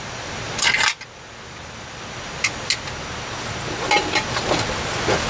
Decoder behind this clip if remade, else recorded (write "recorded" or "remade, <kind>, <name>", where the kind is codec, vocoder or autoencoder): recorded